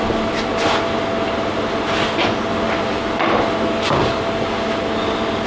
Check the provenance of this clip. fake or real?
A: real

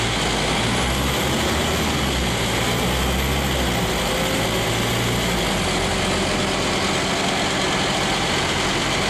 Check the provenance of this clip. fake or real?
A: real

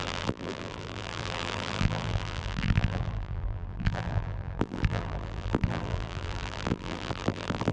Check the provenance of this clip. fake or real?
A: fake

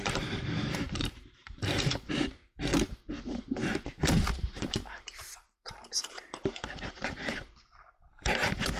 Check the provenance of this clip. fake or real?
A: fake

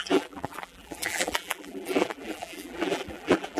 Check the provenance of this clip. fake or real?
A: fake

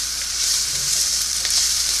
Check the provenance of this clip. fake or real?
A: fake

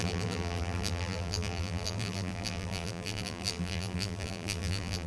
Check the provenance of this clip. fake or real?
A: fake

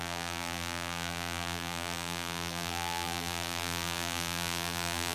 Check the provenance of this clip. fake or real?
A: fake